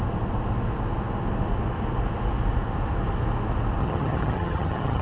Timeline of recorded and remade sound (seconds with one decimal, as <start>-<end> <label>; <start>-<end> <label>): 0.0-3.8 recorded; 3.8-5.0 remade